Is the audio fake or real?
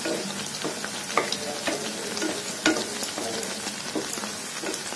real